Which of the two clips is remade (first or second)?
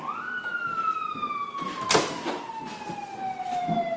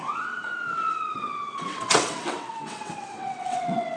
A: second